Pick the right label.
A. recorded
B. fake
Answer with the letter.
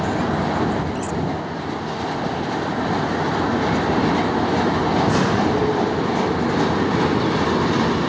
A